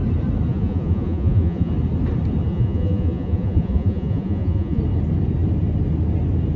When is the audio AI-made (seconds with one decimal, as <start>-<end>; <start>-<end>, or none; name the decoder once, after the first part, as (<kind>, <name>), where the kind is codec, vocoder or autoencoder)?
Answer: 0.5-1.7 (vocoder, Vocos); 2.5-4.8